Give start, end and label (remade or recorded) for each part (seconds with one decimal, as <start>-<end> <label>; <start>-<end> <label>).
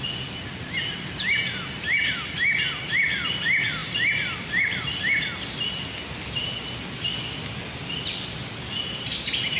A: 0.0-9.6 recorded